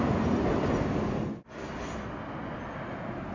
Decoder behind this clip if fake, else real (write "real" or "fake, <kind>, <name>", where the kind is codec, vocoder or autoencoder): real